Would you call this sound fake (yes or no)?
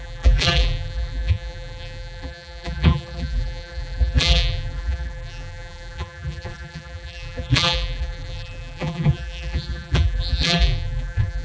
yes